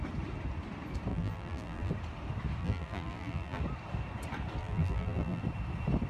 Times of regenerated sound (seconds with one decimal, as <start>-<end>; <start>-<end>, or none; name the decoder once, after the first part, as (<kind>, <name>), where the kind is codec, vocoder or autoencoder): 1.1-1.9 (vocoder, BigVGAN v2); 2.6-3.6; 4.6-5.4